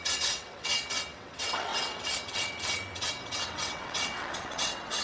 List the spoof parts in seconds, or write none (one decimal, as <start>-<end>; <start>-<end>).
0.0-5.0